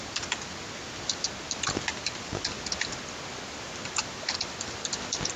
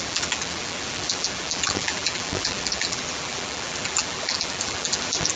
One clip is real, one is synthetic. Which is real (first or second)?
first